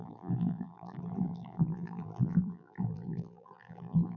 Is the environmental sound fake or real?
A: fake